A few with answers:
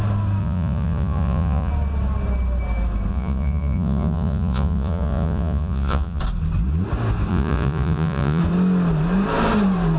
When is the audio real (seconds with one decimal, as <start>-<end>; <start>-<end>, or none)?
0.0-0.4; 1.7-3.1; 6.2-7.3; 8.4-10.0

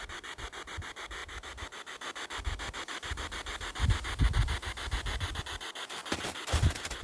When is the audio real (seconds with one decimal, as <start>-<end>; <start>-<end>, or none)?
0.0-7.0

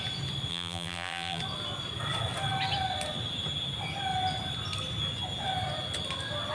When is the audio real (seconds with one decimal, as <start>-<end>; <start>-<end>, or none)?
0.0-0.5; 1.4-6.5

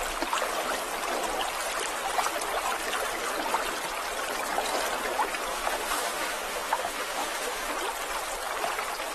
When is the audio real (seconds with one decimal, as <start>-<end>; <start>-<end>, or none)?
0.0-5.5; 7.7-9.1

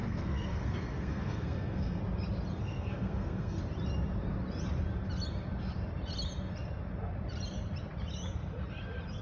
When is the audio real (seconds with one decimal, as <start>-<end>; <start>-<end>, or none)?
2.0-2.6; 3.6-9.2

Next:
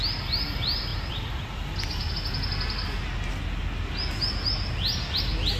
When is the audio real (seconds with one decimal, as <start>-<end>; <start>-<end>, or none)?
0.0-0.9; 2.1-5.6

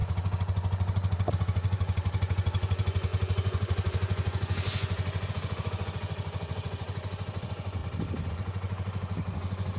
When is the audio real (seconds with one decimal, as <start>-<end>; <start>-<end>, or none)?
7.8-8.3